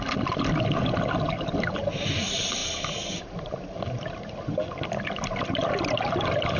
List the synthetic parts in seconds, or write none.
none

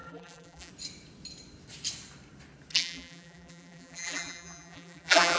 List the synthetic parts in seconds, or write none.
0.0-0.7 (vocoder, BigVGAN v2); 2.7-5.4

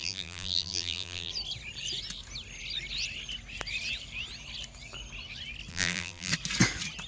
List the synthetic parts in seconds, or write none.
0.0-1.3 (vocoder, BigVGAN v2); 5.7-6.3

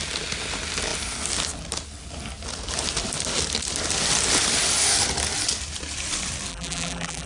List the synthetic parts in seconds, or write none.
6.5-7.3 (vocoder, BigVGAN v2)

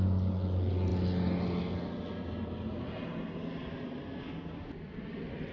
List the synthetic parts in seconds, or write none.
none